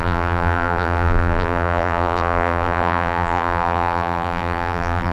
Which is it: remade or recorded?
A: remade